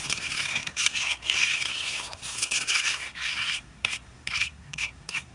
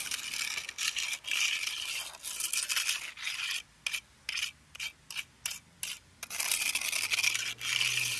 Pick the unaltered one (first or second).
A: second